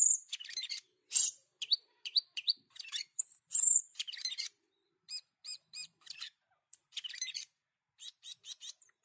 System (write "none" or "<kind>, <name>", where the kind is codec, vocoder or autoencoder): vocoder, BigVGAN v2